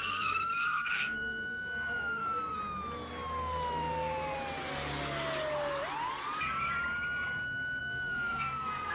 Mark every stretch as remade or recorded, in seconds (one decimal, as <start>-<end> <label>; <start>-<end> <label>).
0.0-2.6 remade; 2.6-7.8 recorded; 7.8-8.9 remade